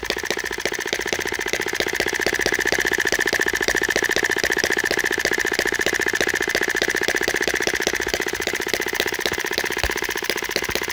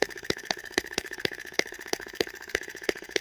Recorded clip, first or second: first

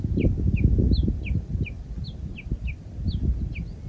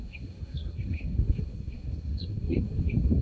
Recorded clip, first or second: first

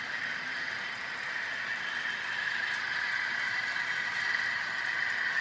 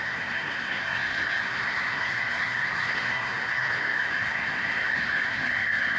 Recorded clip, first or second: first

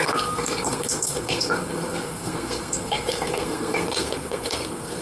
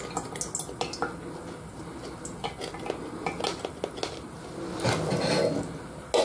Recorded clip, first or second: second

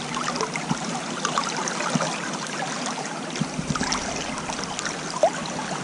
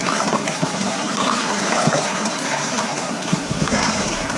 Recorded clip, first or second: first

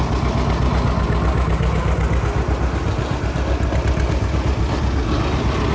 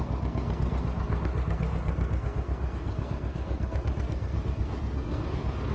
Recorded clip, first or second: first